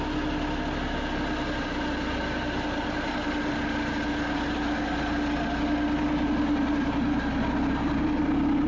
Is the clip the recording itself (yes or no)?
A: yes